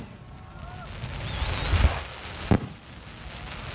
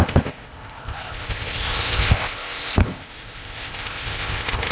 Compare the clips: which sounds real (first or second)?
first